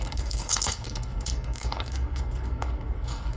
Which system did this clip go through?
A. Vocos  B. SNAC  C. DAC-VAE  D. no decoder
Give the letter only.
B